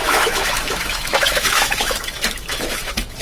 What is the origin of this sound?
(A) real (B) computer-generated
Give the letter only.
B